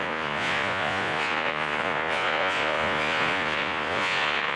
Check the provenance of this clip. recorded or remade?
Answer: remade